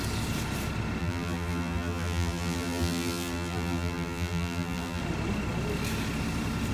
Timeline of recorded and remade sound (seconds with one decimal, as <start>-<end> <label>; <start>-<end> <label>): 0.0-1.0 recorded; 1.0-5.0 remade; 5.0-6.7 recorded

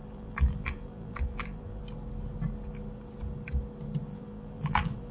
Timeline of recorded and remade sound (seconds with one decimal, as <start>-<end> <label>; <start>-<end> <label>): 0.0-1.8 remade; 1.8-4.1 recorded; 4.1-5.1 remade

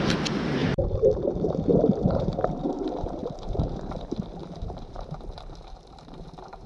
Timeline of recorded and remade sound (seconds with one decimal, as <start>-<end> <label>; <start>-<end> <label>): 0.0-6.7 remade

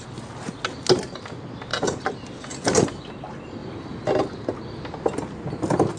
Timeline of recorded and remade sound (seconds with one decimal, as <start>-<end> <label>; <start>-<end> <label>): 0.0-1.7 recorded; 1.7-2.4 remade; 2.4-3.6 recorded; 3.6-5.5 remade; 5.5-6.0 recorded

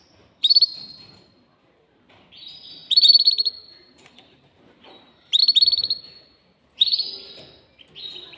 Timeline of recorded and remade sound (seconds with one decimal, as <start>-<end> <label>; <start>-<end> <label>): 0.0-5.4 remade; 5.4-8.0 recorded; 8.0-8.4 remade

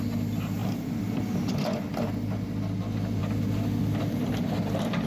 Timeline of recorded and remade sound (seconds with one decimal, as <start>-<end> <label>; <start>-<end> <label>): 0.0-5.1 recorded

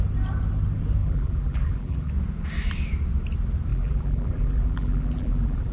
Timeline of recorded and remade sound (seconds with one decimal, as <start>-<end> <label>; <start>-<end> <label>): 0.0-1.0 recorded; 1.0-2.1 remade; 2.1-3.7 recorded; 3.7-5.7 remade

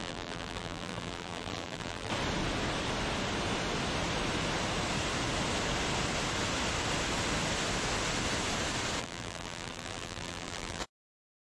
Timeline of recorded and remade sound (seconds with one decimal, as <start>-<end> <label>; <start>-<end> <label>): 0.0-2.1 remade; 2.1-9.0 recorded; 9.0-10.8 remade; 10.8-11.4 recorded